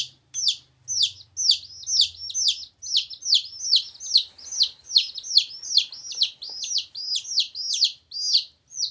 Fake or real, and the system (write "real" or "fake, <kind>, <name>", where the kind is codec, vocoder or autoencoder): real